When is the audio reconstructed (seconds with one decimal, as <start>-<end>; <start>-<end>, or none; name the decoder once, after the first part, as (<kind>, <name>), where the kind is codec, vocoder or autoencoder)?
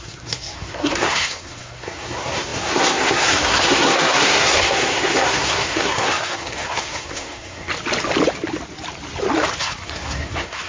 0.0-7.7 (codec, SNAC); 9.6-10.7